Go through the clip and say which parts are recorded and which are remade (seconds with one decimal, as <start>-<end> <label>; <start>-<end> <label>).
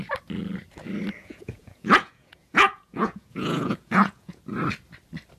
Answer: 0.0-1.2 recorded; 1.2-4.4 remade; 4.4-5.4 recorded